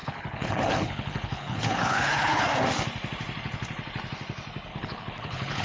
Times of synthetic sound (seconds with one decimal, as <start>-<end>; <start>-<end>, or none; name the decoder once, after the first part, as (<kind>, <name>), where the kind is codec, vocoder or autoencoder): 0.0-2.4 (codec, HILCodec); 4.7-5.6